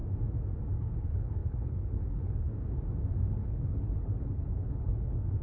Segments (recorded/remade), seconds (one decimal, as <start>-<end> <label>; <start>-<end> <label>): 0.0-0.8 recorded; 0.8-2.5 remade; 2.5-3.4 recorded; 3.4-5.4 remade